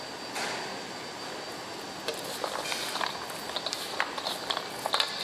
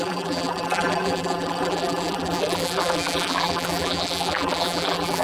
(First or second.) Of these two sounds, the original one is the first